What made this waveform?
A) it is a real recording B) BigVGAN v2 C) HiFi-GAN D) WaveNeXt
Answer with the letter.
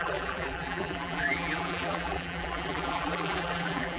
B